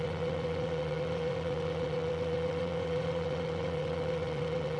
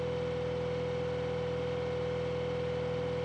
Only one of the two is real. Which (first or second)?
second